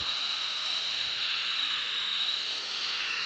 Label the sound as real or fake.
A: fake